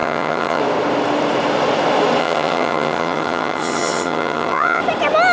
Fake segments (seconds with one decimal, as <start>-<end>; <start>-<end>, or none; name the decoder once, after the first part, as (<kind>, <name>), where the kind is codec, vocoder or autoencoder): 0.0-0.6 (vocoder, HiFi-GAN); 2.2-4.8